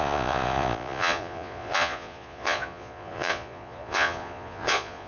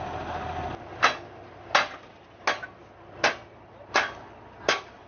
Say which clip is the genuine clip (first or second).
second